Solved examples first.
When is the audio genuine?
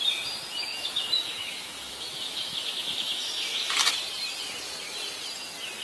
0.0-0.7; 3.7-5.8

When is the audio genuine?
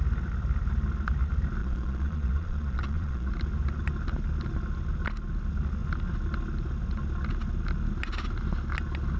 0.0-1.6; 3.3-9.2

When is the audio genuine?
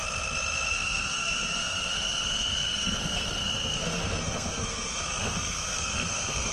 0.0-0.7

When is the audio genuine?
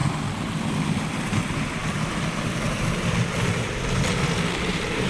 0.6-5.1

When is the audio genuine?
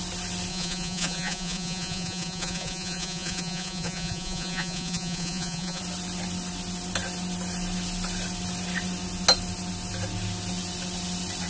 0.0-0.5; 5.8-11.5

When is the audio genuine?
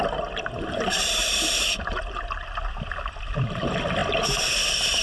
none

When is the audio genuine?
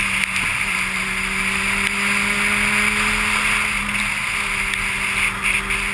0.0-5.9